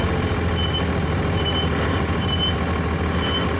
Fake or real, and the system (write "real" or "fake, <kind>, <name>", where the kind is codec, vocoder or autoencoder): real